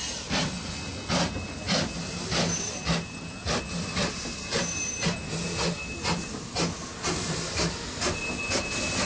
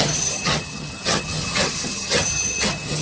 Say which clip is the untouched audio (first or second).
first